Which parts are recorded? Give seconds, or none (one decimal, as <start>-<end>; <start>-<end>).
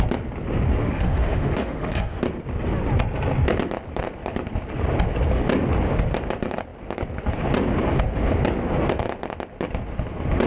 0.0-0.8; 2.2-10.5